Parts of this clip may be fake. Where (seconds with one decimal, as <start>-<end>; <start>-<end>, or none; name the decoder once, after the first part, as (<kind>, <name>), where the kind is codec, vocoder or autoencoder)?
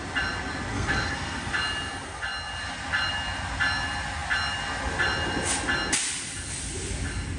0.7-1.5 (codec, SNAC)